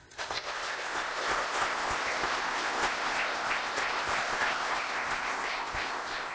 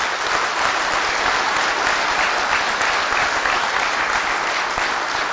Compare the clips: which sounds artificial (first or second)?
first